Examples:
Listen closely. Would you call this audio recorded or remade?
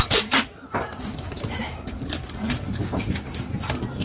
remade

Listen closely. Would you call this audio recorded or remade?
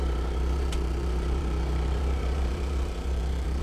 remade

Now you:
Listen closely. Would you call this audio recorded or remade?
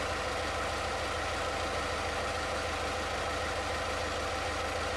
recorded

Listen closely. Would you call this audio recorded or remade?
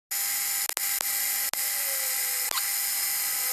recorded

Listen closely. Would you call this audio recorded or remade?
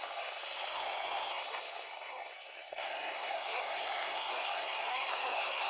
remade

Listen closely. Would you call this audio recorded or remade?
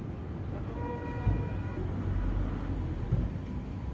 recorded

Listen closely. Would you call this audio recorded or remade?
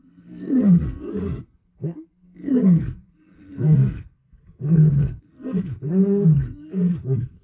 remade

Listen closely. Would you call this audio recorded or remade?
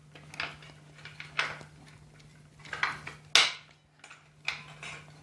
recorded